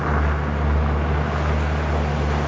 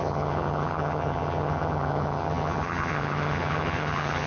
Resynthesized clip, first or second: second